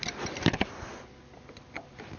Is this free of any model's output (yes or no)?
yes